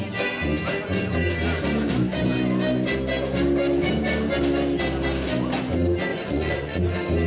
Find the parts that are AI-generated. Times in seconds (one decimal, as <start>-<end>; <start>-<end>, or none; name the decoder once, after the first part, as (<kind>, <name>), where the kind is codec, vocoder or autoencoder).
6.1-6.8 (vocoder, Vocos)